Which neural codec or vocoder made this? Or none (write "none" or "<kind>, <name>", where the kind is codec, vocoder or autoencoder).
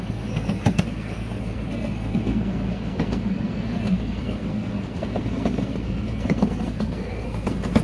codec, SNAC